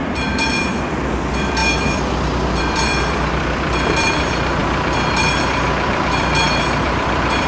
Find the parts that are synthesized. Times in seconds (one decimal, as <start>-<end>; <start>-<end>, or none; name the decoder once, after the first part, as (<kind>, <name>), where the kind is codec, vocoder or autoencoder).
0.0-7.5 (vocoder, BigVGAN v2)